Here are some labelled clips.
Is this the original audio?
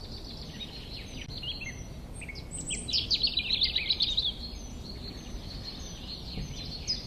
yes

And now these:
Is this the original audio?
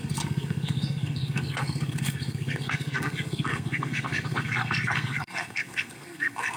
no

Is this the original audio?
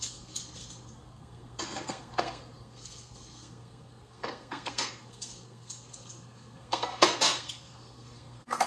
no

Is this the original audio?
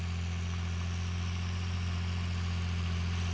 yes